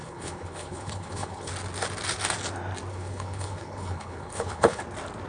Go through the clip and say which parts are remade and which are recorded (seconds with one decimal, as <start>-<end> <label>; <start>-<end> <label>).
0.0-1.5 remade; 1.5-2.9 recorded; 2.9-4.8 remade; 4.8-5.3 recorded